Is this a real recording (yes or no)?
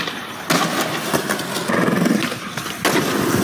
yes